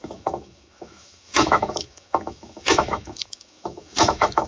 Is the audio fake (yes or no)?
yes